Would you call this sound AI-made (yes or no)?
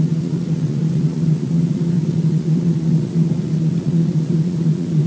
yes